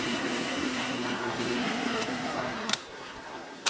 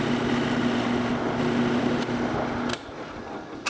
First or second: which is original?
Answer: second